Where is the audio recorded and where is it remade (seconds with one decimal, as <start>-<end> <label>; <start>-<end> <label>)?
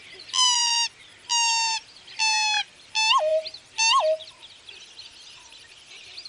0.0-6.3 recorded